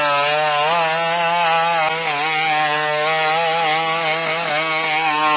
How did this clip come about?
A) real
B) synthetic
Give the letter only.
A